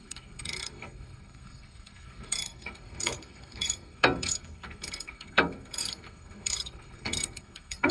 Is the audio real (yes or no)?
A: no